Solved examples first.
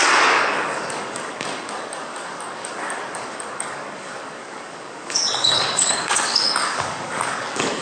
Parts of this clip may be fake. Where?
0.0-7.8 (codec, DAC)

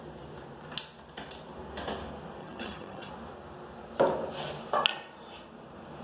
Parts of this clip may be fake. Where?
2.4-3.1 (vocoder, HiFi-GAN)

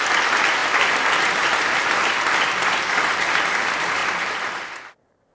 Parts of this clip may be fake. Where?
4.0-4.6 (vocoder, BigVGAN v2)